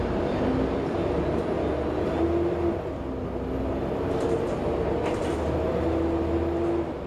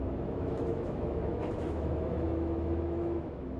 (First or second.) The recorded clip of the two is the first